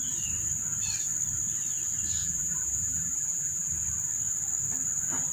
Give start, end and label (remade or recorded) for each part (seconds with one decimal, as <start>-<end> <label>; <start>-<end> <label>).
0.0-2.2 recorded; 2.2-3.7 remade; 3.7-5.3 recorded